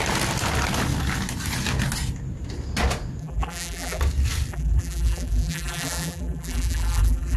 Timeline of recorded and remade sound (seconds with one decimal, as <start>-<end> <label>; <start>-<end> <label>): 0.0-3.2 recorded; 3.2-4.0 remade; 4.0-4.5 recorded; 4.5-7.4 remade